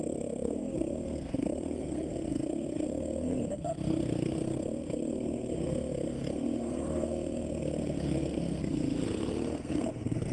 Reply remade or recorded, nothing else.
remade